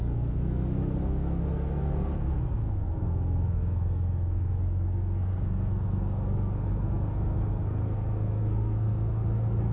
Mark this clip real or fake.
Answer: fake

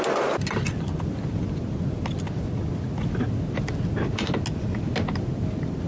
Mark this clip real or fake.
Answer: real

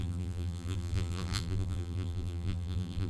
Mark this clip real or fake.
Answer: fake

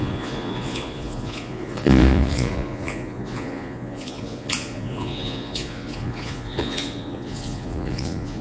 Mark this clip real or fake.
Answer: fake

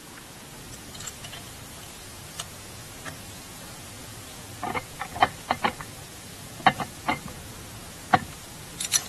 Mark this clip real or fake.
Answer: fake